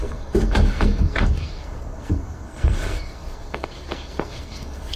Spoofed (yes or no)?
yes